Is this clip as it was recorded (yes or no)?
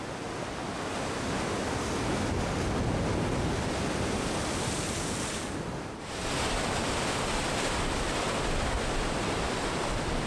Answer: yes